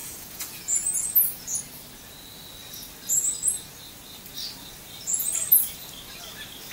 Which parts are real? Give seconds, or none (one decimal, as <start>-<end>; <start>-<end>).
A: 1.6-6.7